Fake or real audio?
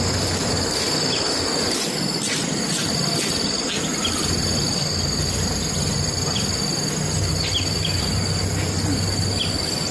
real